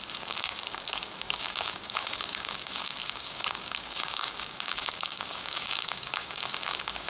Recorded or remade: remade